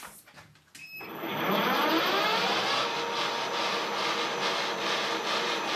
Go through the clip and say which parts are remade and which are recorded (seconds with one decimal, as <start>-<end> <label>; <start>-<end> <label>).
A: 0.0-0.8 recorded; 0.8-2.1 remade; 2.1-5.8 recorded